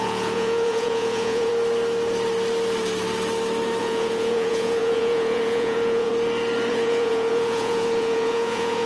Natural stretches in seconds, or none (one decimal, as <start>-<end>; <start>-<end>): 1.5-3.8; 6.1-6.7